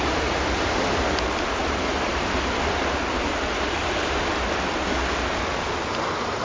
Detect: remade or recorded recorded